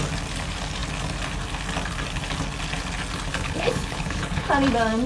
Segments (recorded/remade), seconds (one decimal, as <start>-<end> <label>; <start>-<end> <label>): 0.0-3.3 recorded; 3.3-4.5 remade; 4.5-5.1 recorded